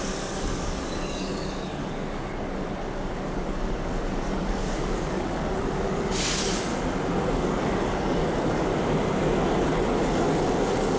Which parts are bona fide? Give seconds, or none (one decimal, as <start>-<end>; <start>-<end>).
6.7-7.2; 8.7-9.6